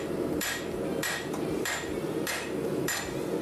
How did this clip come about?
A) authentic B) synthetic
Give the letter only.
B